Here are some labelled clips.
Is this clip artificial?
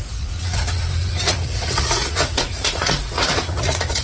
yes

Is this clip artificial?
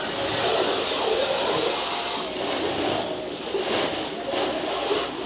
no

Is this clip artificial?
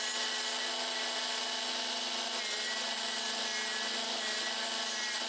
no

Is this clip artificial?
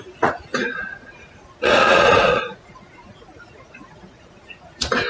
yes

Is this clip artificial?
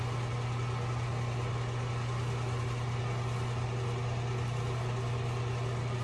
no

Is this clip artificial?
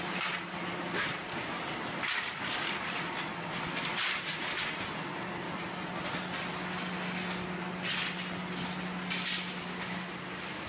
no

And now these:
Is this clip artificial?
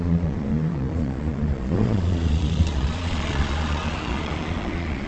yes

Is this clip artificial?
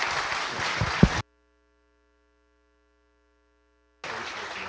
no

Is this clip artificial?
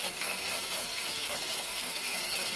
yes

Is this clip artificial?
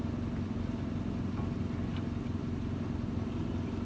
no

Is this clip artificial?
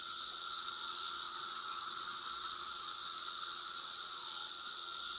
yes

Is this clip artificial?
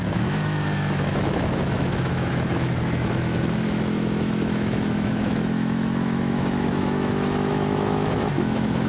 yes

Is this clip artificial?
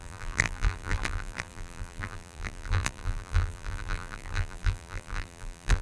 yes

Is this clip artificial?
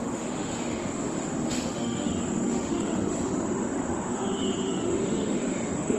yes